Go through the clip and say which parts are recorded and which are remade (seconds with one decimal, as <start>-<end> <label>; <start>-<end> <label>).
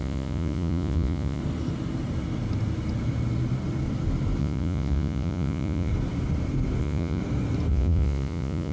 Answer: 0.0-1.4 remade; 1.4-4.4 recorded; 4.4-5.9 remade; 5.9-6.8 recorded; 6.8-7.2 remade; 7.2-7.7 recorded; 7.7-8.7 remade